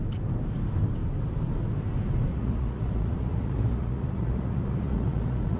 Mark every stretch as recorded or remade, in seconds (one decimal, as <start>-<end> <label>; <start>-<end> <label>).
0.0-2.3 recorded; 2.3-5.6 remade